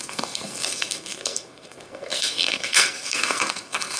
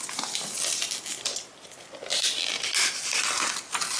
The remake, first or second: first